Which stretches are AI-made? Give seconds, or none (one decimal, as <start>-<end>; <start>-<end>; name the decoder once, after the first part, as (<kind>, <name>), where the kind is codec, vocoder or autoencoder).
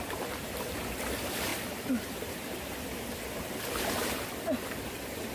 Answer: none